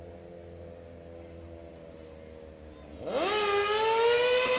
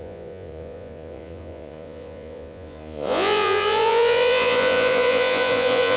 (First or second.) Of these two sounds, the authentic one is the first